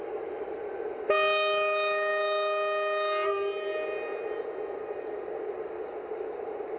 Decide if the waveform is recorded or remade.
recorded